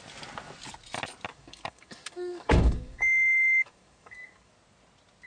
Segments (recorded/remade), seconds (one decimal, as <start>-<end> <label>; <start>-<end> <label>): 0.0-1.3 recorded; 1.3-4.5 remade; 4.5-5.3 recorded